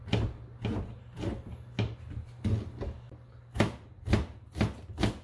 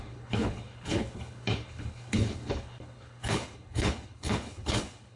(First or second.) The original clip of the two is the first